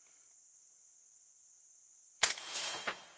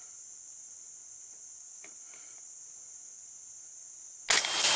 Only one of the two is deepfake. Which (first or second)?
first